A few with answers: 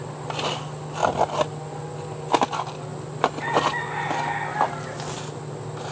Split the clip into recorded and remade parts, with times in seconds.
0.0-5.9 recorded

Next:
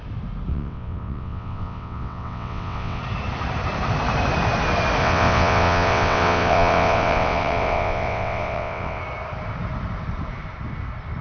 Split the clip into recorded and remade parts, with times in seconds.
0.0-0.5 recorded; 0.5-3.0 remade; 3.0-5.0 recorded; 5.0-9.0 remade; 9.0-11.2 recorded

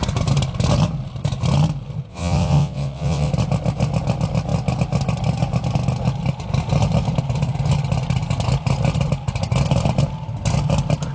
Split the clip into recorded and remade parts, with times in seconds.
0.0-2.1 recorded; 2.1-3.3 remade; 3.3-11.1 recorded